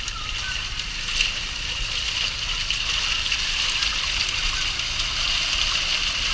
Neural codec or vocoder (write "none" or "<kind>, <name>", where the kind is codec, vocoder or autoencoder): none